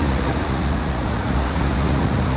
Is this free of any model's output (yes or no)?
no